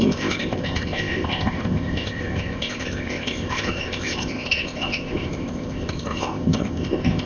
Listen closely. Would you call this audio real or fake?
fake